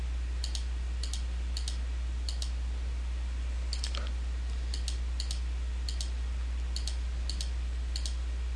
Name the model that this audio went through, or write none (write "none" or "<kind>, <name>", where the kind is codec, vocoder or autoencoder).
none